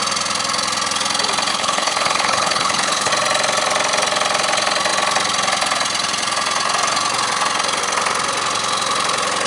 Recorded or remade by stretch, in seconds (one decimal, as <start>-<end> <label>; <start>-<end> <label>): 0.0-1.5 recorded; 1.5-3.1 remade; 3.1-9.5 recorded